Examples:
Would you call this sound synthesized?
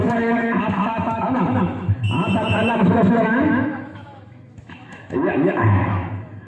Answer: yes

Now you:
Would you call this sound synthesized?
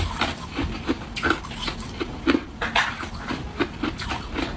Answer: no